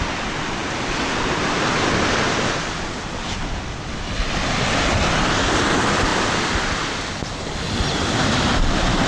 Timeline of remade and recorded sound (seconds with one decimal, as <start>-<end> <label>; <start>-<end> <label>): 0.0-9.1 recorded

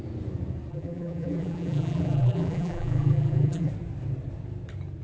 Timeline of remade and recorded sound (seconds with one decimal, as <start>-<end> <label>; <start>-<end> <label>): 0.0-0.7 recorded; 0.7-3.7 remade; 3.7-5.0 recorded

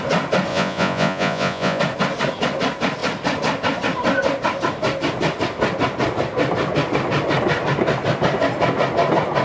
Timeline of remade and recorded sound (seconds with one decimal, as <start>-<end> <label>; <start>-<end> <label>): 0.0-0.5 recorded; 0.5-1.8 remade; 1.8-9.4 recorded

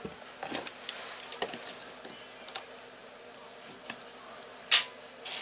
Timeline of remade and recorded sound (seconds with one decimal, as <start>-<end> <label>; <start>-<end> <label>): 0.0-3.0 recorded; 3.0-3.8 remade; 3.8-5.4 recorded

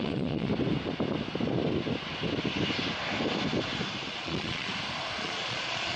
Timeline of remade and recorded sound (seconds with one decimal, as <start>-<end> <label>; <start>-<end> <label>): 0.0-0.5 remade; 0.5-4.1 recorded; 4.1-4.7 remade; 4.7-5.2 recorded; 5.2-6.0 remade